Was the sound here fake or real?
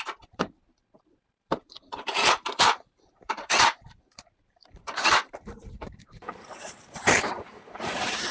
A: fake